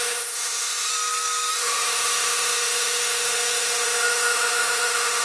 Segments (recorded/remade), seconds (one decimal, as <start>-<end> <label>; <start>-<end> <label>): 0.0-0.9 remade; 0.9-1.5 recorded; 1.5-5.2 remade

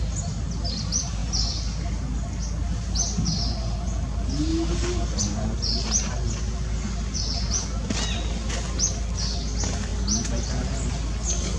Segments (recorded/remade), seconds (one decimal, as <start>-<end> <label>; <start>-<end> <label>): 0.0-11.6 recorded

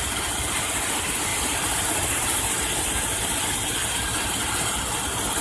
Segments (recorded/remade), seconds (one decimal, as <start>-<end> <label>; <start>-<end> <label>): 0.0-1.3 recorded; 1.3-2.4 remade; 2.4-3.8 recorded; 3.8-5.0 remade; 5.0-5.4 recorded